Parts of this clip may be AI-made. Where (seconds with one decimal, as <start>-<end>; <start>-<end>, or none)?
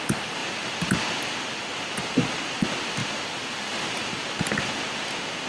none